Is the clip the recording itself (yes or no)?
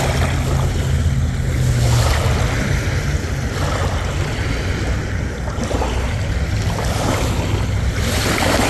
yes